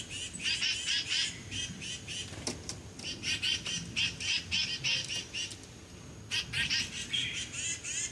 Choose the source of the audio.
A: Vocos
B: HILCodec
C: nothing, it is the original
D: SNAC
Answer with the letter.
C